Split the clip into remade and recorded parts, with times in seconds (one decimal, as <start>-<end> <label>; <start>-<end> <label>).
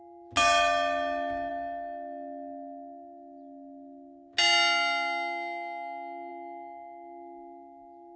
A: 0.0-8.2 recorded